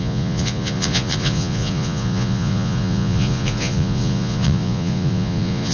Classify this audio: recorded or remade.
remade